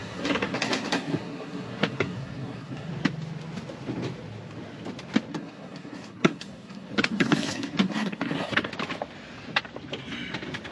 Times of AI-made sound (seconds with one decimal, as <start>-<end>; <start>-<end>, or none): 0.0-2.9; 5.3-8.7